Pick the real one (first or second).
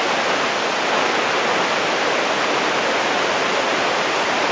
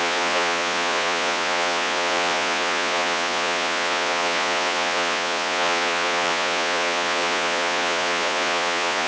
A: first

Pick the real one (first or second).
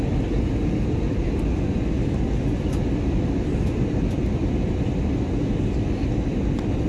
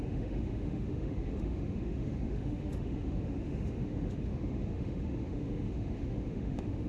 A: first